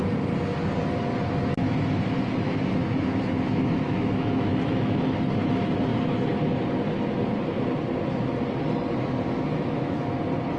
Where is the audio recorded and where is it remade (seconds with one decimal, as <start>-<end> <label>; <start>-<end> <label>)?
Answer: 0.0-2.8 recorded; 2.8-5.0 remade; 5.0-9.5 recorded; 9.5-10.2 remade; 10.2-10.6 recorded